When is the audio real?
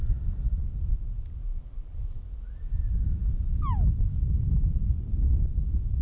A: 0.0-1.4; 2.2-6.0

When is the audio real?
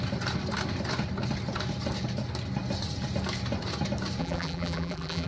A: 0.0-4.2